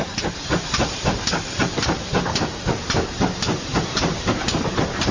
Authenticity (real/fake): real